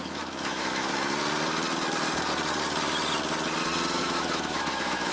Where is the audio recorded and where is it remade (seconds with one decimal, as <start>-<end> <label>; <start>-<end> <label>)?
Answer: 0.0-0.9 remade; 0.9-4.0 recorded; 4.0-5.1 remade